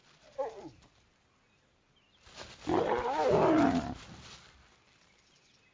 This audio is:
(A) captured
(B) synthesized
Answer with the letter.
A